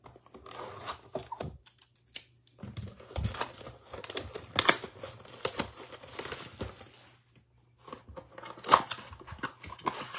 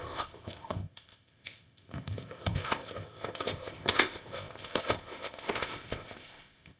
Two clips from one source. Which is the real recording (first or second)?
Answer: first